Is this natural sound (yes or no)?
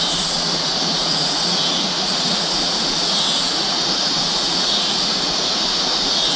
no